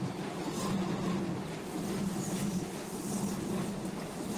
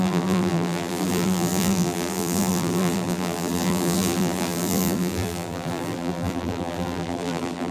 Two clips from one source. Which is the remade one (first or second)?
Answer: second